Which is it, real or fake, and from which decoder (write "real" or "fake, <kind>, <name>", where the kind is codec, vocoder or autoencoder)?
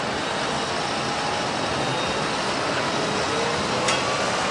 real